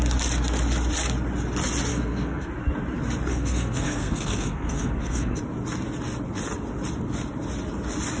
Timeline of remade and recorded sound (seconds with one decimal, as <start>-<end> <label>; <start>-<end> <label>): 0.0-1.9 recorded; 1.9-2.5 remade; 2.5-3.3 recorded; 3.3-5.4 remade; 5.4-8.2 recorded